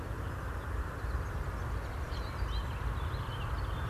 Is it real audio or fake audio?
real